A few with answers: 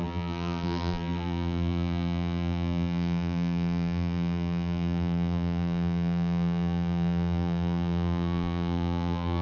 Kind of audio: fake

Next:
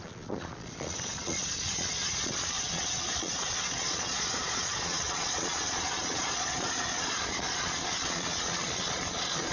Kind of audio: fake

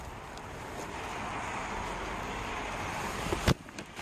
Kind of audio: real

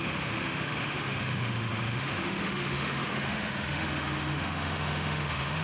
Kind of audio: fake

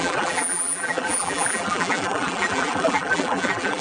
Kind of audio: fake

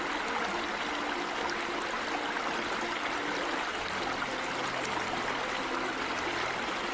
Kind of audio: real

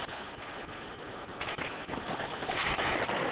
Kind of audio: real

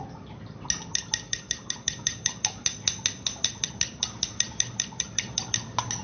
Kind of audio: real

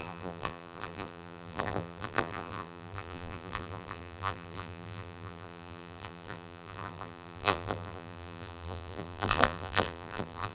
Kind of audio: fake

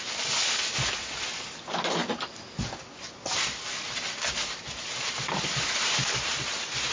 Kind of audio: real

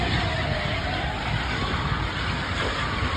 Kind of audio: real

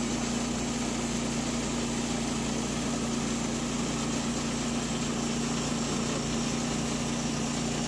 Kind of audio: real